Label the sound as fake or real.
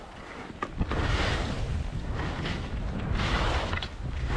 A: real